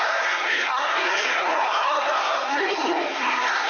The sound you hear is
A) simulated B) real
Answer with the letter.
A